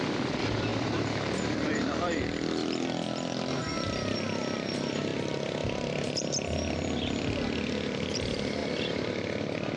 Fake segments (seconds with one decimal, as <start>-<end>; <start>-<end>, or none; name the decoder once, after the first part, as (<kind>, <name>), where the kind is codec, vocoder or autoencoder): 0.0-9.8 (vocoder, BigVGAN v2)